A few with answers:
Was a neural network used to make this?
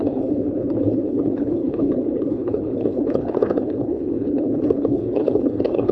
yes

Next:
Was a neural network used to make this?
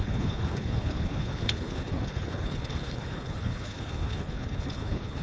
yes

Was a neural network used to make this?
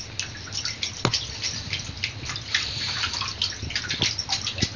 no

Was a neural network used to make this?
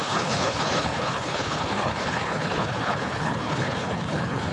yes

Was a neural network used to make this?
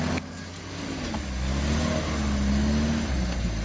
no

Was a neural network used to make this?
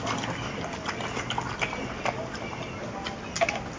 no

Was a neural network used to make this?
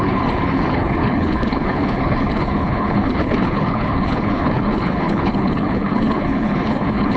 yes